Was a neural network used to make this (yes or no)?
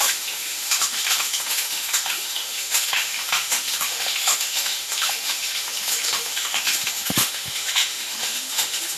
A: yes